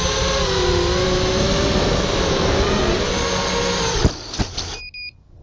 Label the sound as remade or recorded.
recorded